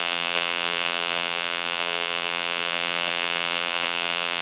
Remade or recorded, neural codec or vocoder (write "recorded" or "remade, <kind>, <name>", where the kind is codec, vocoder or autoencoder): remade, vocoder, BigVGAN v2